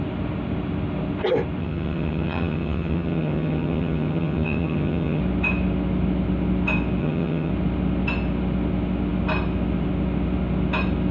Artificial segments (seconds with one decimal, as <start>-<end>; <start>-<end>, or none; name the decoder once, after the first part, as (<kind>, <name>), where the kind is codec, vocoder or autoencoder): 1.6-5.2 (vocoder, HiFi-GAN); 7.0-7.5